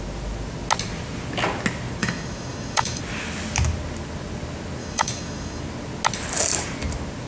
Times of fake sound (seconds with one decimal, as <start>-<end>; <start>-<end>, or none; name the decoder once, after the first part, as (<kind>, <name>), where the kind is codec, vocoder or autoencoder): 2.0-3.0 (autoencoder, DAC-VAE); 4.8-5.6